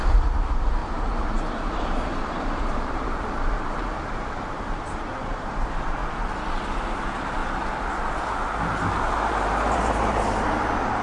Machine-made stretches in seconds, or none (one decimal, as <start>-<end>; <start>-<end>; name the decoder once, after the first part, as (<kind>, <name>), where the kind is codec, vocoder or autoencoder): 0.0-6.0 (vocoder, BigVGAN v2); 6.6-7.4; 9.0-11.0